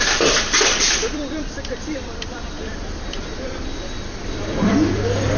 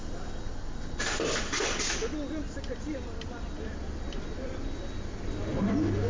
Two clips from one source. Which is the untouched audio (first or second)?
second